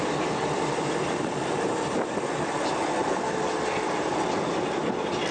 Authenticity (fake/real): real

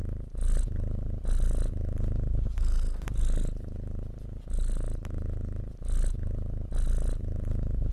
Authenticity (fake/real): real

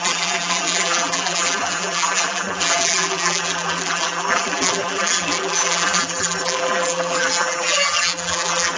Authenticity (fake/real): fake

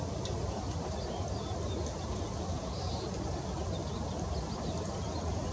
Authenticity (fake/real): fake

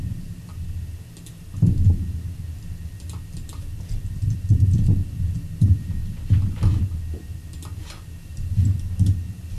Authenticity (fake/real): real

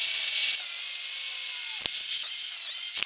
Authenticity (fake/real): real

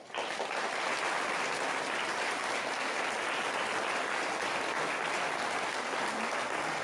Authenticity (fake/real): real